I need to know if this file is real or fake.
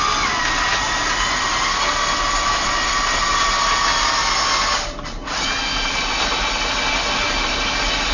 real